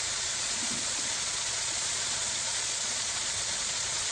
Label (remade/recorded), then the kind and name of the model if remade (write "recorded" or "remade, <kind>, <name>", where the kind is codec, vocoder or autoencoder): remade, vocoder, Vocos